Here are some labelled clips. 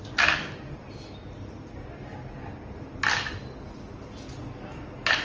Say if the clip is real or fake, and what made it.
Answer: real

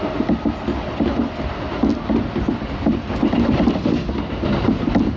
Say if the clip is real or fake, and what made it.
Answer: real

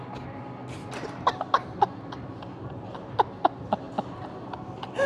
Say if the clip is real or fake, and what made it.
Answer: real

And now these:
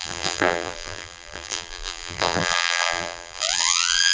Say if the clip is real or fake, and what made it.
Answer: fake, vocoder, BigVGAN v2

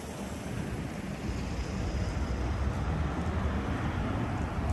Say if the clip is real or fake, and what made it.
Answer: real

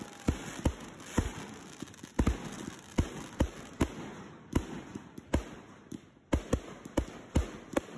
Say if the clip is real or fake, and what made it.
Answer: real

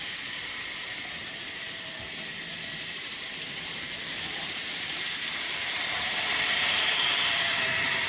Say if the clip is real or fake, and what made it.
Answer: fake, vocoder, BigVGAN v2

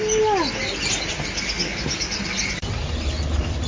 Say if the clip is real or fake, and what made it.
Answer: real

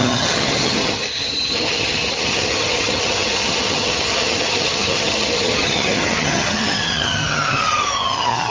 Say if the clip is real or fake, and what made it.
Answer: fake, vocoder, HiFi-GAN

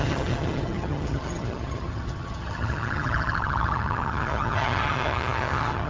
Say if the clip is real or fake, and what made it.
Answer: fake, vocoder, HiFi-GAN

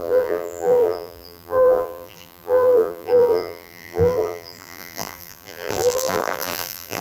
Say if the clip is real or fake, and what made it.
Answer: fake, vocoder, BigVGAN v2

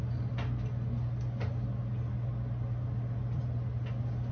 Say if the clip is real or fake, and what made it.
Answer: real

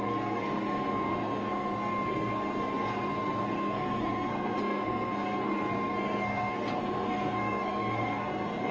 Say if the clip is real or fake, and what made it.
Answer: fake, codec, SNAC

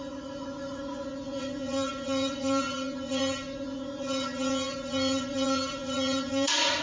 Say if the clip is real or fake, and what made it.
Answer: fake, vocoder, Vocos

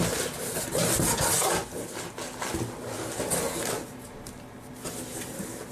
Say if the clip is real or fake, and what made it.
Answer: real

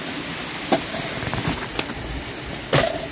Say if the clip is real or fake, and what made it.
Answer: real